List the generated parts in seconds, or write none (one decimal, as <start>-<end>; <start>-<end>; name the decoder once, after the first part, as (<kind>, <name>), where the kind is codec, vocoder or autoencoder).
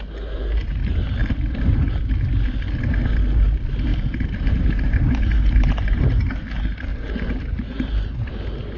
1.2-2.0 (vocoder, BigVGAN v2); 3.9-6.0; 6.9-8.3